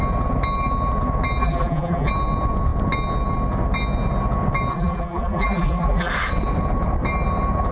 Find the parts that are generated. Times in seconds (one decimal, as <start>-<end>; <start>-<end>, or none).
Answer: 1.4-2.1; 4.7-6.1